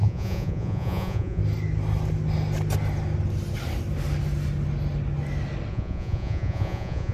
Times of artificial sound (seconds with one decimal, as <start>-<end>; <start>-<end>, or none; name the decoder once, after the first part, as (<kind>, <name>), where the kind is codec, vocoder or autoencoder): 0.0-1.4 (vocoder, Vocos); 5.7-7.1